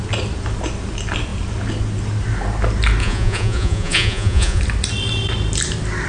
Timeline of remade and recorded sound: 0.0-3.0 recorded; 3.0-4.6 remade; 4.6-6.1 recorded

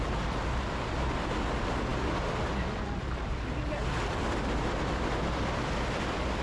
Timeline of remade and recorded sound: 0.0-6.4 recorded